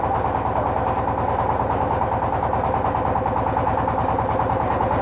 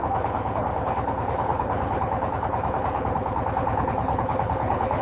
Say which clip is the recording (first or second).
first